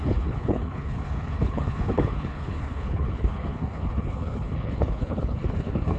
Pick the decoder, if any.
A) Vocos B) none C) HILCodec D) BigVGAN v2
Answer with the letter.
C